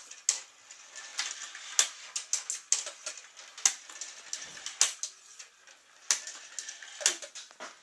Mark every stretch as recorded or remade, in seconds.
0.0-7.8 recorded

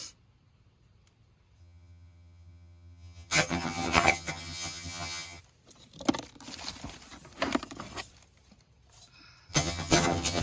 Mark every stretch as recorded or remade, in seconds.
0.0-1.6 recorded; 1.6-5.4 remade; 5.4-9.5 recorded; 9.5-10.4 remade

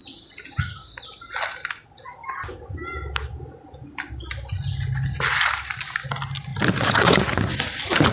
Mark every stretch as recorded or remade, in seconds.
0.0-8.1 recorded

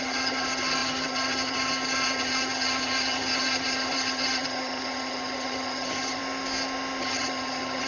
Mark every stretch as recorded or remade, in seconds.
0.0-6.2 remade; 6.2-7.0 recorded; 7.0-7.9 remade

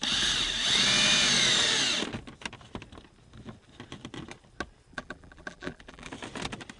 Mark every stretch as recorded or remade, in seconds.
0.0-4.9 recorded; 4.9-6.1 remade; 6.1-6.8 recorded

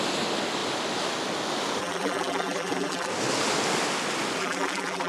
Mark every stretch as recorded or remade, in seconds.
0.0-1.8 recorded; 1.8-3.1 remade; 3.1-4.4 recorded; 4.4-5.1 remade